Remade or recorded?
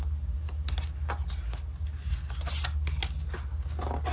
recorded